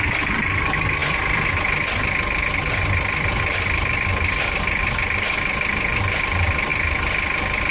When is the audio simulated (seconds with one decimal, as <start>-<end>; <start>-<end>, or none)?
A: 0.0-7.7